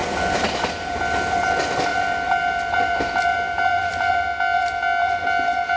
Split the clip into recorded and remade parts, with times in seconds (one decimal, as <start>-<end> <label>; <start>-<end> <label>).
0.0-1.0 remade; 1.0-1.9 recorded; 1.9-4.1 remade; 4.1-5.8 recorded